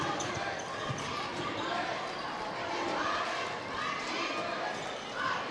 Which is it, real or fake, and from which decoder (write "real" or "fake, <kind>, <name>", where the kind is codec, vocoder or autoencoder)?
real